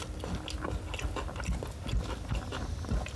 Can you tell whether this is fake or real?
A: real